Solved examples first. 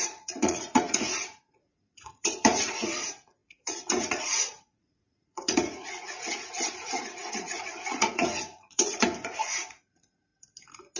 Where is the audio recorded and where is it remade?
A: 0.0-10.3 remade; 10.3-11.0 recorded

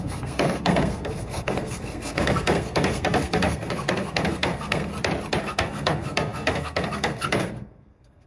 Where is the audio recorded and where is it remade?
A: 0.0-4.9 remade; 4.9-5.4 recorded; 5.4-8.3 remade

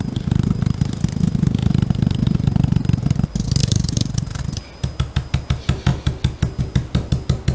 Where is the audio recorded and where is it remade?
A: 0.0-3.6 recorded; 3.6-4.4 remade; 4.4-7.5 recorded

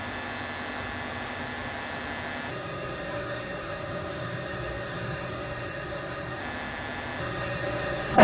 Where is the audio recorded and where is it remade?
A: 0.0-2.5 recorded; 2.5-6.4 remade; 6.4-7.2 recorded; 7.2-8.2 remade

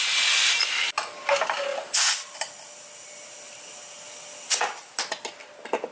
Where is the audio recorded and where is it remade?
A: 0.0-5.9 recorded

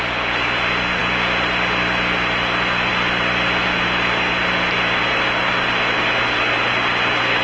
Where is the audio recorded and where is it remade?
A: 0.0-7.4 recorded

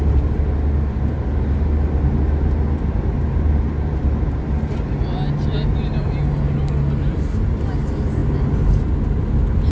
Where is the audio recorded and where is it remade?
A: 0.0-9.7 recorded

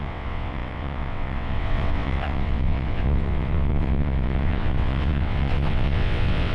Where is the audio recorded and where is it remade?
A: 0.0-6.5 remade